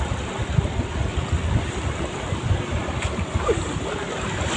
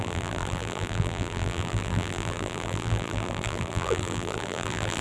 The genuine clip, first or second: first